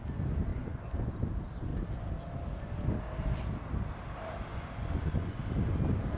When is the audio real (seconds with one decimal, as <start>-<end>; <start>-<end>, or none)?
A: 0.0-0.5; 1.1-4.5; 5.4-6.2